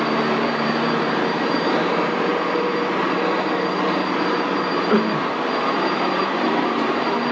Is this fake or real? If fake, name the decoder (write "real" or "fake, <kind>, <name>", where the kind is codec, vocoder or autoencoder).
fake, vocoder, BigVGAN v2